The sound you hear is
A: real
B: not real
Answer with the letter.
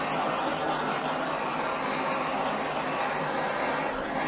A